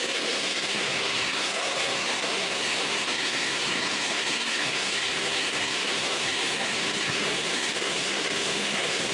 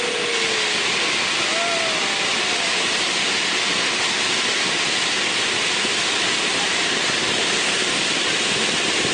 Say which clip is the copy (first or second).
first